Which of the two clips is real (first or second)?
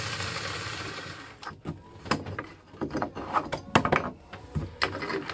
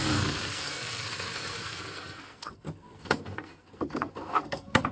first